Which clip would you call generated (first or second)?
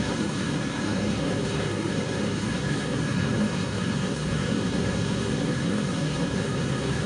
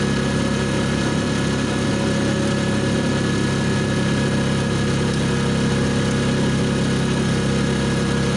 first